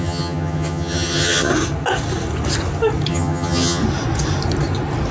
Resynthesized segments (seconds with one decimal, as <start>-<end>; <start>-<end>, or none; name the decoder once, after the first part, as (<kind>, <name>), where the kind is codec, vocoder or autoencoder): 0.0-1.5 (vocoder, HiFi-GAN); 3.1-3.8